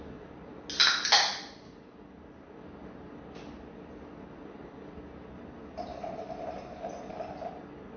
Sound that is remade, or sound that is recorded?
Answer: recorded